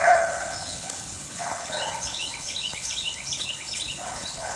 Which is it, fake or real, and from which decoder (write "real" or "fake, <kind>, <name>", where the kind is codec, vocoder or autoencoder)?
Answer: fake, codec, HILCodec